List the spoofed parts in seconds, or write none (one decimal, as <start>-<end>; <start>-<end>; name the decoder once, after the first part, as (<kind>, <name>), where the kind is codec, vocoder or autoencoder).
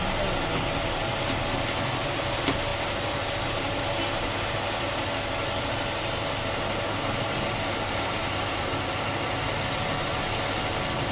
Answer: none